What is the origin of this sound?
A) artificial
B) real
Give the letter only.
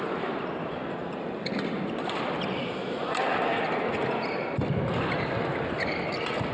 B